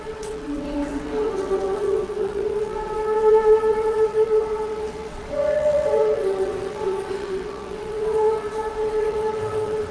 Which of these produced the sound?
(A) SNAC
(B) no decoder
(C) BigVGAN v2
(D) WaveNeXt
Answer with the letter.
D